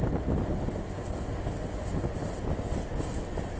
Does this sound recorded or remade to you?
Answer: recorded